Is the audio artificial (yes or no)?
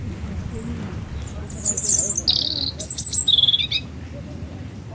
no